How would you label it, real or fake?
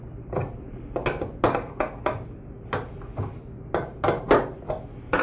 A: real